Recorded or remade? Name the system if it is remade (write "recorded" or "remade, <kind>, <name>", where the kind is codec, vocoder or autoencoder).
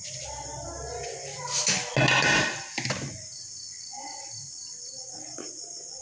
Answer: recorded